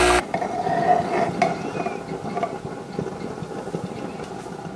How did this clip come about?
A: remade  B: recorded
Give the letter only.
B